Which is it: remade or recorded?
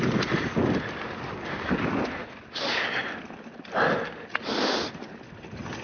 recorded